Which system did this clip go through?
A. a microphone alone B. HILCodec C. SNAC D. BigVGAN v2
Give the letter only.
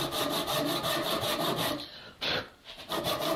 A